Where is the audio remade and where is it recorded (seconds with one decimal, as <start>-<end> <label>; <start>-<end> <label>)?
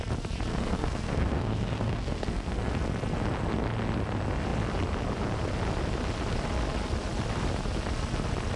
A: 0.0-0.5 recorded; 0.5-2.7 remade; 2.7-8.6 recorded